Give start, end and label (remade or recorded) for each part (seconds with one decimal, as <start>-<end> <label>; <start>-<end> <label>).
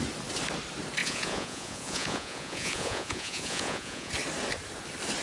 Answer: 0.0-1.0 recorded; 1.0-4.1 remade; 4.1-5.2 recorded